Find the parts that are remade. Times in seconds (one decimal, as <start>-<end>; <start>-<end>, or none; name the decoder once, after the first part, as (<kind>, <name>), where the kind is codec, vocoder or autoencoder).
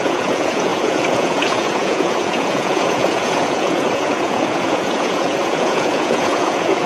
0.0-6.9 (vocoder, Vocos)